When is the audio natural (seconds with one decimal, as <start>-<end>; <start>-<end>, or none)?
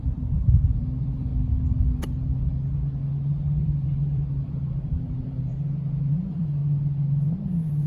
1.3-3.6; 5.5-6.1; 6.6-7.9